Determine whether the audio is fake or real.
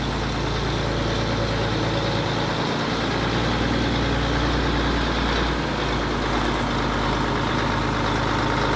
real